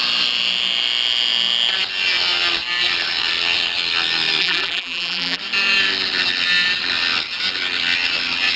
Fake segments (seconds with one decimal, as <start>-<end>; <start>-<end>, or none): 4.4-5.4